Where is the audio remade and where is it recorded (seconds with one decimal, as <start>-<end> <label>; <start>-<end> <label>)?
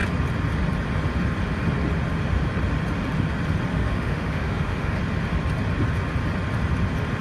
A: 0.0-3.7 recorded; 3.7-5.0 remade; 5.0-7.2 recorded